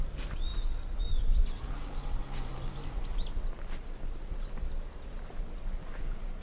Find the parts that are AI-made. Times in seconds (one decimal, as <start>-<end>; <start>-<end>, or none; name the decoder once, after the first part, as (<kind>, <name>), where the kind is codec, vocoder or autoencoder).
none